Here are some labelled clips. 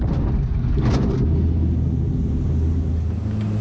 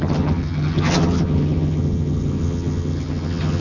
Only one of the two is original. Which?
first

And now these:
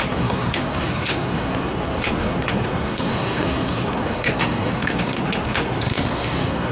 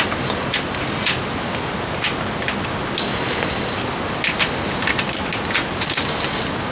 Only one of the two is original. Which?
second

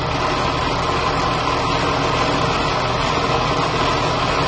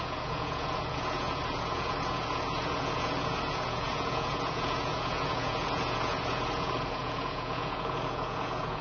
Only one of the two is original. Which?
first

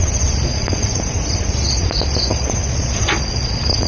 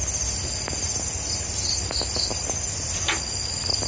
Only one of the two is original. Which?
second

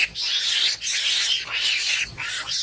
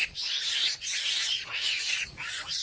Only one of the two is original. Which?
first